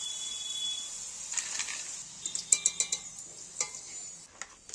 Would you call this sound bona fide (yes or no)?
yes